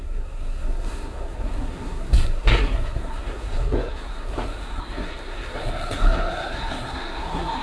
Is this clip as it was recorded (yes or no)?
no